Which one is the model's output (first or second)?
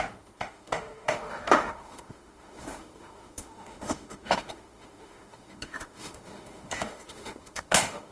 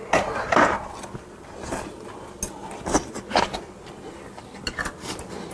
first